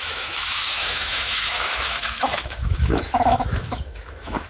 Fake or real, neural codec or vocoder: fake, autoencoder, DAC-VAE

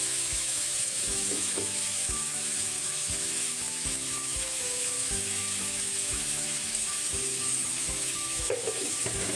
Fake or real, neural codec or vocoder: fake, autoencoder, DAC-VAE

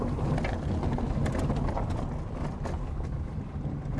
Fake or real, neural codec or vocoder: real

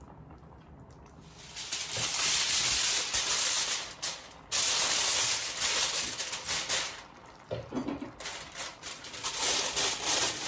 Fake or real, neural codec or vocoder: real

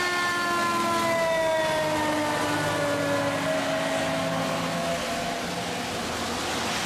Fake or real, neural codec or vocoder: real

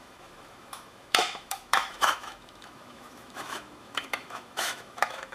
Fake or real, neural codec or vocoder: fake, autoencoder, DAC-VAE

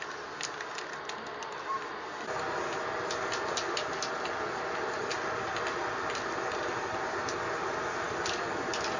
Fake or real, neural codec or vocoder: real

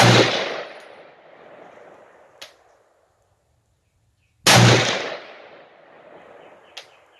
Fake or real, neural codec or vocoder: real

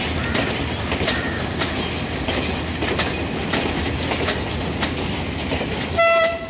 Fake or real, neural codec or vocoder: real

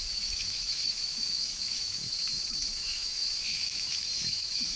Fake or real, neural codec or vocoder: fake, autoencoder, DAC-VAE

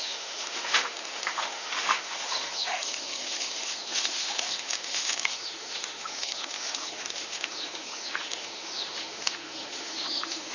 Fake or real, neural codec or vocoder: fake, autoencoder, DAC-VAE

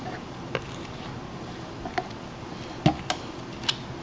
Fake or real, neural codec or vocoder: real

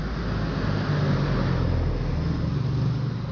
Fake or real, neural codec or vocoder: real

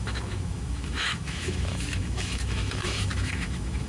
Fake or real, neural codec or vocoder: fake, autoencoder, DAC-VAE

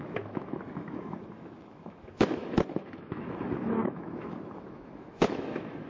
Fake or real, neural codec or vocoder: fake, autoencoder, DAC-VAE